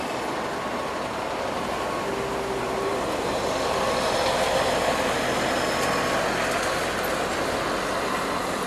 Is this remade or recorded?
recorded